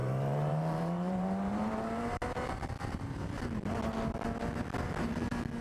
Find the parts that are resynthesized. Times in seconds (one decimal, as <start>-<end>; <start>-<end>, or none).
0.0-3.4